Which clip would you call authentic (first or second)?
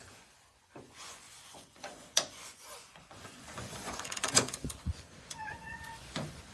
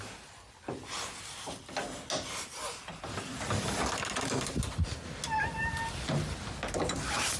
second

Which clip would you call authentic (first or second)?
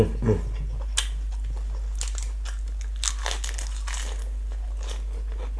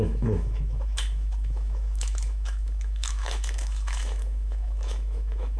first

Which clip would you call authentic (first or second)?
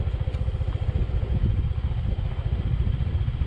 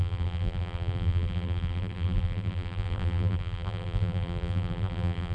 first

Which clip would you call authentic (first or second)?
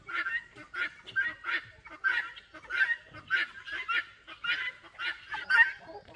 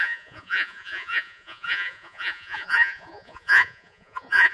first